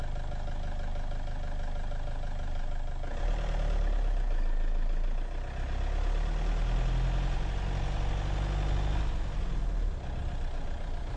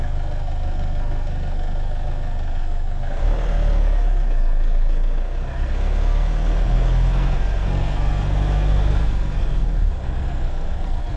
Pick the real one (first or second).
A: first